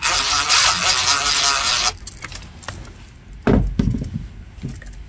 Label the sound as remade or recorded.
recorded